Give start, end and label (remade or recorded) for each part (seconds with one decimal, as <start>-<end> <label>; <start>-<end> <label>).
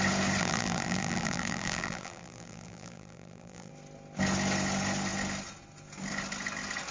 0.0-0.4 recorded; 0.4-3.7 remade; 3.7-6.9 recorded